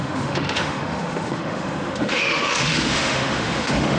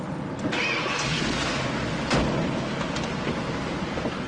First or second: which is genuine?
second